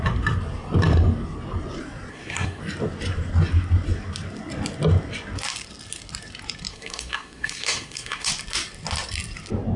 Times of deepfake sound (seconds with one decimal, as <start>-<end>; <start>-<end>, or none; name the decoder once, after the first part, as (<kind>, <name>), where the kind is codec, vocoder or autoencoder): 2.1-2.6 (codec, SNAC); 6.7-8.3